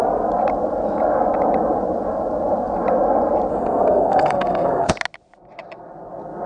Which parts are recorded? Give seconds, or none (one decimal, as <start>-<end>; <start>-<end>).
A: 0.0-3.5; 4.9-6.5